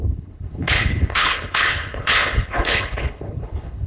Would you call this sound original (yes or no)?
no